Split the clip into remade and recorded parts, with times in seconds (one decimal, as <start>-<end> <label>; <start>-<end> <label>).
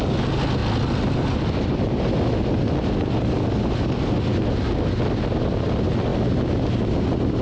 0.0-7.4 recorded